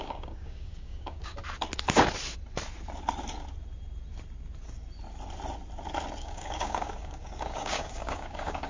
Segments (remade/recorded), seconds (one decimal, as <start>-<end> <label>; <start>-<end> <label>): 0.0-1.4 remade; 1.4-6.2 recorded; 6.2-8.7 remade